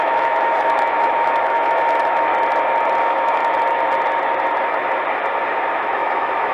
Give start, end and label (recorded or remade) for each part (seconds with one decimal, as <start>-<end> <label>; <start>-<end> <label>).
0.0-2.3 remade; 2.3-3.0 recorded; 3.0-3.4 remade; 3.4-5.8 recorded; 5.8-6.5 remade